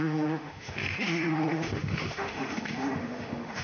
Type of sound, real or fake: fake